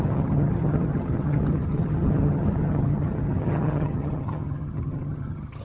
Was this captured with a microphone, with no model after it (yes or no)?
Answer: no